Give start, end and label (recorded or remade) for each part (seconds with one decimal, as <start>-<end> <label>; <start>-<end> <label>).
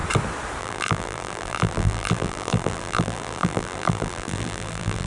0.0-0.6 recorded; 0.6-5.1 remade